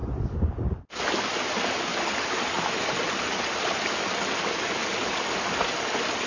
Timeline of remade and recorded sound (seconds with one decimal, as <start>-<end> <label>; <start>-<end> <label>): 0.0-6.3 recorded